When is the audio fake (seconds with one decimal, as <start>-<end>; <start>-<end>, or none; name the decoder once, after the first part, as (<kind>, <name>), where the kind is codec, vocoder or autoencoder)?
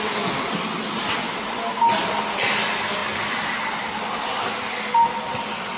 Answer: none